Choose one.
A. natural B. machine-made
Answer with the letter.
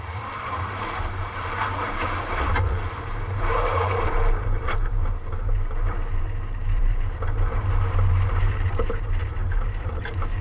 B